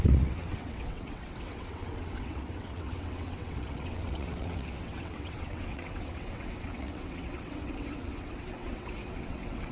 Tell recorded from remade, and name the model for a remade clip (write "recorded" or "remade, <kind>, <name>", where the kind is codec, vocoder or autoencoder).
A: remade, vocoder, WaveNeXt